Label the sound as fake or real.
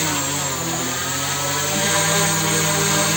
real